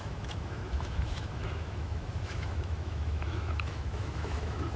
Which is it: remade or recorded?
remade